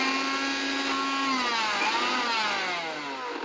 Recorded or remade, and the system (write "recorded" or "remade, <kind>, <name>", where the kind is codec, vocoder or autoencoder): recorded